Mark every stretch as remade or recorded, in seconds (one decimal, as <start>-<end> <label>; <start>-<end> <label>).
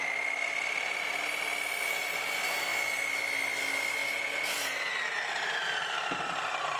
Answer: 0.0-4.0 recorded; 4.0-4.9 remade; 4.9-6.8 recorded